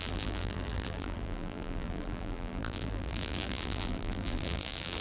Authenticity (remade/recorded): remade